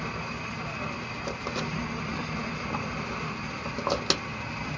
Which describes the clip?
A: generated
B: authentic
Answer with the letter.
B